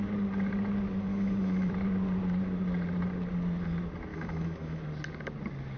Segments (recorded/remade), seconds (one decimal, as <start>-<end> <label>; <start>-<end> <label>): 0.0-1.1 recorded; 1.1-1.7 remade; 1.7-4.1 recorded; 4.1-4.8 remade; 4.8-5.8 recorded